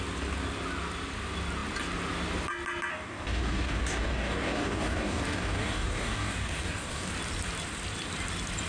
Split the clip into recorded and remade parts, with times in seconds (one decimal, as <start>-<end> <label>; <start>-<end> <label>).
0.0-2.9 recorded; 2.9-7.1 remade; 7.1-8.7 recorded

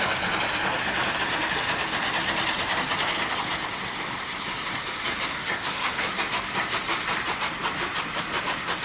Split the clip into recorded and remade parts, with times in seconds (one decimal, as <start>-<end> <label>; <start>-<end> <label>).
0.0-5.3 recorded; 5.3-6.1 remade; 6.1-8.8 recorded

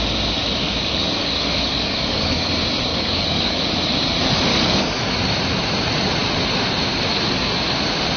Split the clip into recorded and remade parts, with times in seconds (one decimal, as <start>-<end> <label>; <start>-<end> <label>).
0.0-0.6 recorded; 0.6-2.5 remade; 2.5-2.9 recorded; 2.9-3.6 remade; 3.6-4.5 recorded; 4.5-5.1 remade; 5.1-8.2 recorded

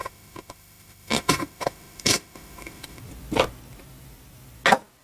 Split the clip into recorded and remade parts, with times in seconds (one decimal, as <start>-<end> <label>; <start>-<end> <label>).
0.0-3.0 remade; 3.0-5.0 recorded

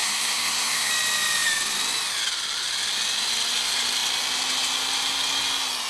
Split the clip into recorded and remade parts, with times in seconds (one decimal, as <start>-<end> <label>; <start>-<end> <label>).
0.0-0.9 remade; 0.9-5.9 recorded

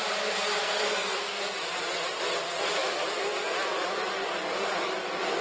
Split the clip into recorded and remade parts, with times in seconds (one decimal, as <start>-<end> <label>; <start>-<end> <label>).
0.0-0.6 recorded; 0.6-1.4 remade; 1.4-5.4 recorded